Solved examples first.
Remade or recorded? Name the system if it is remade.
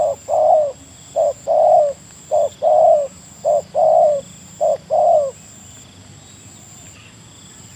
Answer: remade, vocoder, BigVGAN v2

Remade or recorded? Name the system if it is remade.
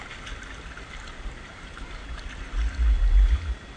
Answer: recorded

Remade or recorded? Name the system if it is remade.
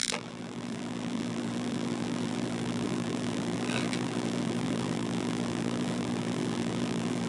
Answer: remade, vocoder, BigVGAN v2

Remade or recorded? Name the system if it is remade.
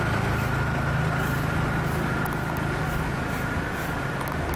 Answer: recorded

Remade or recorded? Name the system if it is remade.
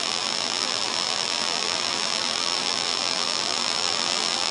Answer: remade, vocoder, BigVGAN v2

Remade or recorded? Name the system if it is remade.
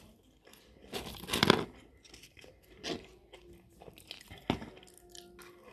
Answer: recorded